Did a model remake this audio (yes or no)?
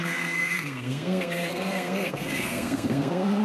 yes